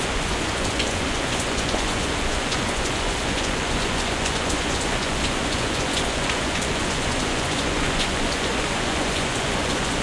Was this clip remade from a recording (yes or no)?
yes